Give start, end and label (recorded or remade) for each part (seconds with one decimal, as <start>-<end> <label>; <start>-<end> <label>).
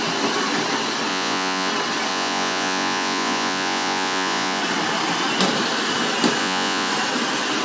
0.0-1.1 recorded; 1.1-1.7 remade; 1.7-2.1 recorded; 2.1-4.6 remade; 4.6-6.4 recorded; 6.4-6.9 remade; 6.9-7.6 recorded